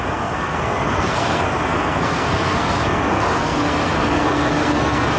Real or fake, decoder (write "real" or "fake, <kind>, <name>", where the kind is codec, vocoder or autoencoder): fake, codec, SNAC